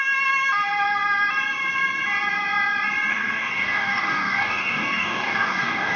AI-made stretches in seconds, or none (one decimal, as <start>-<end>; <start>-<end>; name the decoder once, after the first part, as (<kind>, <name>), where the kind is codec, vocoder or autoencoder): 3.1-6.0 (codec, DAC)